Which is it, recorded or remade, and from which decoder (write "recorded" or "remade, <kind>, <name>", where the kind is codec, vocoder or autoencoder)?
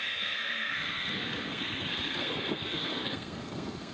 remade, codec, SNAC